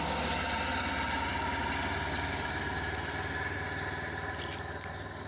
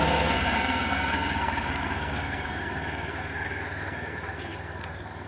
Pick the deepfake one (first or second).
second